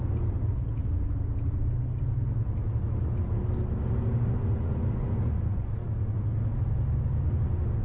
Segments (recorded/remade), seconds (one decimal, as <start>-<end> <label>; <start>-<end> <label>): 0.0-7.8 recorded